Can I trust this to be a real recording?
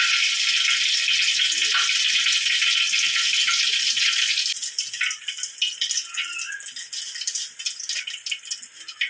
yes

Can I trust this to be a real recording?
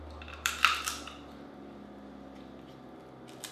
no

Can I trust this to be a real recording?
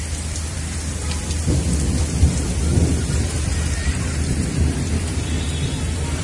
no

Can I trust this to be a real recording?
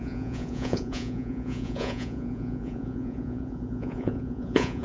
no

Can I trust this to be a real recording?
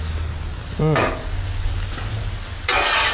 yes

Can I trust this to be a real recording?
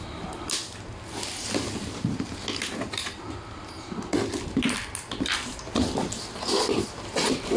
yes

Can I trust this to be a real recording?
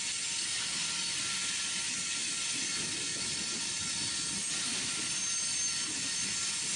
yes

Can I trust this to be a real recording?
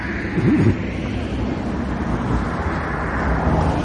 yes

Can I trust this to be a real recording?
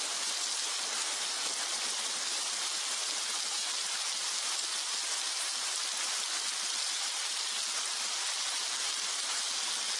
yes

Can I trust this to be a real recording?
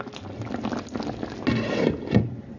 yes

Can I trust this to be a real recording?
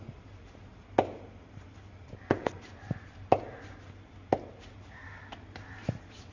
yes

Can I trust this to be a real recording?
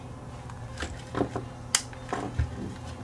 yes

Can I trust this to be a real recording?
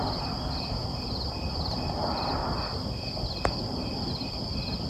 yes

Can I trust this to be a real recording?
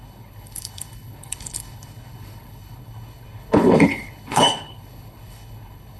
no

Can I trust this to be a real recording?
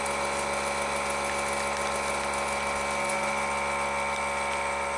yes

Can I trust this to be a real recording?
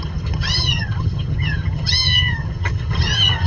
no